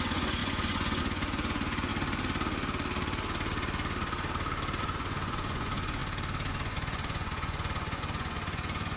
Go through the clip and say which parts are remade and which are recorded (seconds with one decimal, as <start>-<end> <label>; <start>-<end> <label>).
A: 0.0-1.9 remade; 1.9-4.8 recorded; 4.8-6.0 remade; 6.0-6.5 recorded; 6.5-9.0 remade